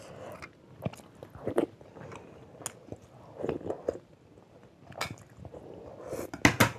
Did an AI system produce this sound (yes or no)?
no